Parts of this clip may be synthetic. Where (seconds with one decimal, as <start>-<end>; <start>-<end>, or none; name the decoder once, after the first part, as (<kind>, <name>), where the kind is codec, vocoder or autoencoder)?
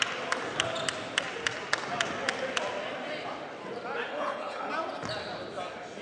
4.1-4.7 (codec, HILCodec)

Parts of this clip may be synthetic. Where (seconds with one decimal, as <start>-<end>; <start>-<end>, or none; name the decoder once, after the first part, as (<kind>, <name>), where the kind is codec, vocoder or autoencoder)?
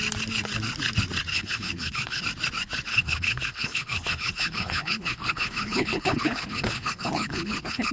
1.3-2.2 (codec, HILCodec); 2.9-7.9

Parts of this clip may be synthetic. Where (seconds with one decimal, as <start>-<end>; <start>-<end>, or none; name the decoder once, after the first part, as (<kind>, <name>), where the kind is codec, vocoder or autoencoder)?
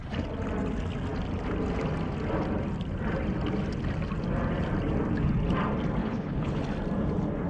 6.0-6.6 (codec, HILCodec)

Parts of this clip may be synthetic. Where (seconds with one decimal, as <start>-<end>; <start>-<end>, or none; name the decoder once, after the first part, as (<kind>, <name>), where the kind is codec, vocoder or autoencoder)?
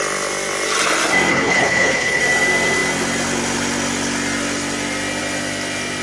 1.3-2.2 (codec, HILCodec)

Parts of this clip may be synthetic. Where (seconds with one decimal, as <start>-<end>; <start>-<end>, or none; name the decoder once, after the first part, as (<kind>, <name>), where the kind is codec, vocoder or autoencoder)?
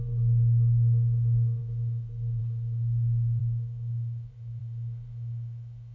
none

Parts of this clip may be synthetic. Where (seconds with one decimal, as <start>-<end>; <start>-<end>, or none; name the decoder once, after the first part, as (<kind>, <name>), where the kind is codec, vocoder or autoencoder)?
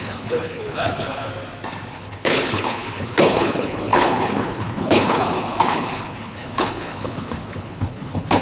0.0-1.3 (codec, HILCodec); 1.9-8.4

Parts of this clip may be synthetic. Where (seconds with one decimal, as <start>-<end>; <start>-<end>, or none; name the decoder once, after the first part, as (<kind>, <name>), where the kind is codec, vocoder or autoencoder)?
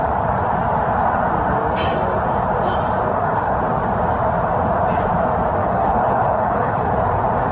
3.1-3.6 (codec, HILCodec); 5.6-6.9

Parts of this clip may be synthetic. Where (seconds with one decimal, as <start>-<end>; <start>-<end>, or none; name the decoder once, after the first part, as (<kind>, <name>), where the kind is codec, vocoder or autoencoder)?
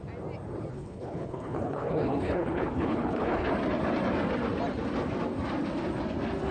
0.7-3.5 (codec, HILCodec)